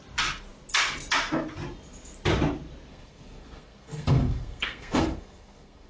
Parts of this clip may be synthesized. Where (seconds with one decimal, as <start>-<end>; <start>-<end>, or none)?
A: 2.9-5.9